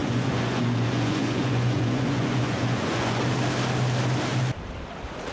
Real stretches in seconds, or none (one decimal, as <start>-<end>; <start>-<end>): 3.2-5.3